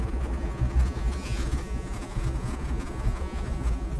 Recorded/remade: remade